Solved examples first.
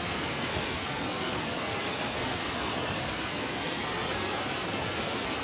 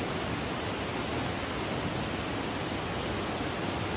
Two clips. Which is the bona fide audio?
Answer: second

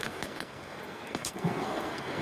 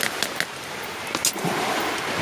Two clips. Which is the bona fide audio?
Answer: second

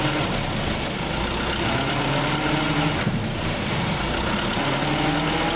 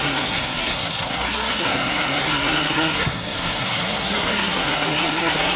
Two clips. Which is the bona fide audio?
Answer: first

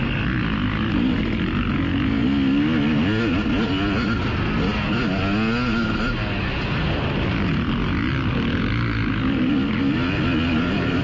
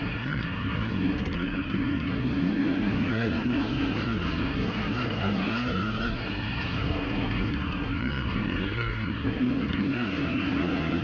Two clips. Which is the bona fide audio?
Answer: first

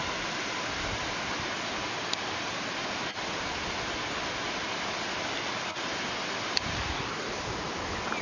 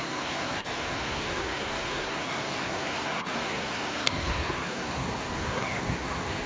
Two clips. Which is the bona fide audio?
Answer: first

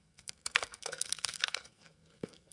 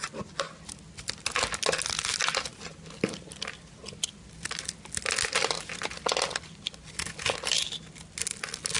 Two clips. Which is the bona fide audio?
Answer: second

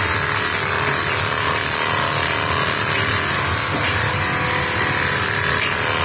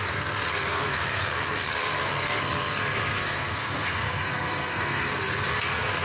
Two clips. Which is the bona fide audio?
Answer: first